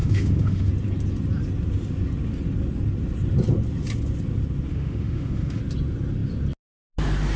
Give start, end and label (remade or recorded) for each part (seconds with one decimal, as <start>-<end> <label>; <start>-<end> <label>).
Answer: 0.0-0.7 remade; 0.7-4.7 recorded; 4.7-5.6 remade; 5.6-7.4 recorded